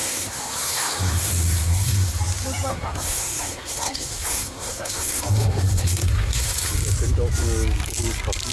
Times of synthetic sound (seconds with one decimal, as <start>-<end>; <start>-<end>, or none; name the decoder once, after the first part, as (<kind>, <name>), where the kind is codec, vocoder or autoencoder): 0.0-2.2 (codec, SNAC); 2.7-6.7